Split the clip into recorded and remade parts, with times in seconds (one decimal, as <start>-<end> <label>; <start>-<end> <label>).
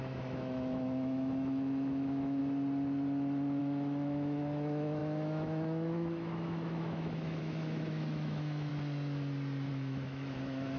0.0-2.4 remade; 2.4-3.6 recorded; 3.6-8.7 remade; 8.7-9.7 recorded; 9.7-10.8 remade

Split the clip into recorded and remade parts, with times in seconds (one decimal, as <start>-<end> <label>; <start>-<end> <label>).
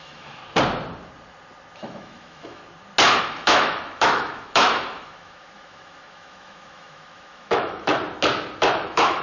0.0-0.4 remade; 0.4-1.8 recorded; 1.8-2.6 remade; 2.6-3.2 recorded; 3.2-7.9 remade; 7.9-8.6 recorded; 8.6-9.2 remade